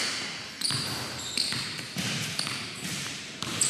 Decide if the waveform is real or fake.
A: fake